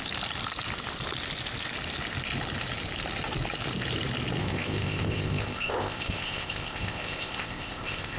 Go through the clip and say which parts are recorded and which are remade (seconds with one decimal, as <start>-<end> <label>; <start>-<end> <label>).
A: 0.0-4.4 recorded; 4.4-8.2 remade